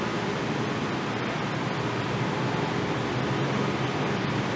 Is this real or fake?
real